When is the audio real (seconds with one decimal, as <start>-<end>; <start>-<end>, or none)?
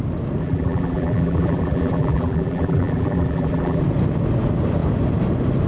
0.0-0.4; 3.8-5.7